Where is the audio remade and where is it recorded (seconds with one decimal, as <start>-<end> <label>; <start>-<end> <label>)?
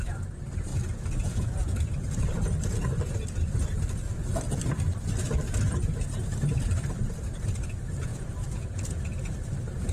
0.0-0.7 recorded; 0.7-1.8 remade; 1.8-8.1 recorded; 8.1-9.0 remade; 9.0-9.9 recorded